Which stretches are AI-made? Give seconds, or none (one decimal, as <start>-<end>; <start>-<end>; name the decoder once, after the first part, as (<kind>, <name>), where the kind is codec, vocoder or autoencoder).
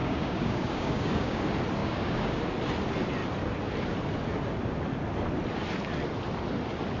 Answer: 0.0-1.4 (codec, DAC); 1.8-2.4